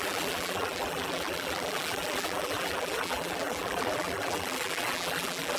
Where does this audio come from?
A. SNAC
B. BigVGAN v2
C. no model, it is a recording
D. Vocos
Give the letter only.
B